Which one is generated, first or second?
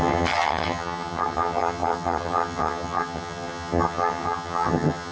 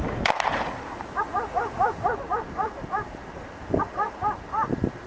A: first